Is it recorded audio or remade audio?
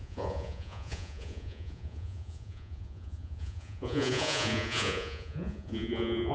remade